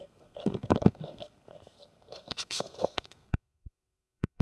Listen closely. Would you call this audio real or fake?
fake